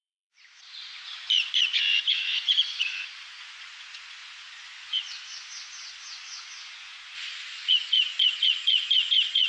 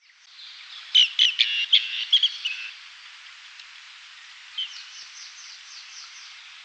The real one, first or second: second